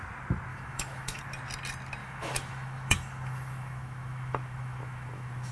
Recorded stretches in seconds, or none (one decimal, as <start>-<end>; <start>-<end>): 0.0-0.5; 1.2-2.0

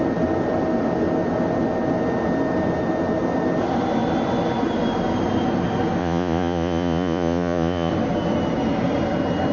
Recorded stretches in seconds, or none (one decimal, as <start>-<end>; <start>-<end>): 0.0-6.0; 7.9-9.5